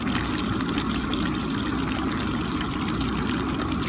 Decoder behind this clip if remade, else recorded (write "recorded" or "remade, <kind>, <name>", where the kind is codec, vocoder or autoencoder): recorded